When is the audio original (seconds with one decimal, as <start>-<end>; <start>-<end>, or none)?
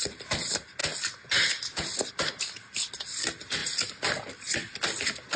0.0-5.4